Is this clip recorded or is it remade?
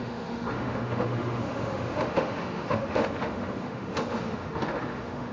remade